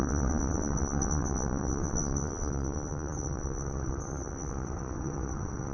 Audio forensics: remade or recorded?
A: remade